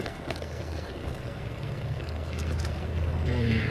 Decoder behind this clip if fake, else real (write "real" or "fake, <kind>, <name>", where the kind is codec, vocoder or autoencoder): fake, codec, SNAC